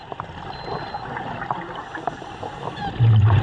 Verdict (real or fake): real